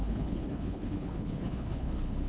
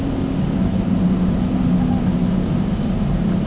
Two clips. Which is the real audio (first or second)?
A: second